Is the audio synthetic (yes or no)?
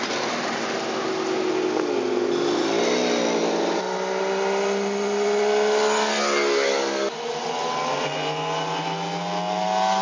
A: no